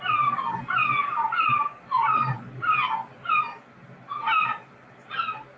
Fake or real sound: real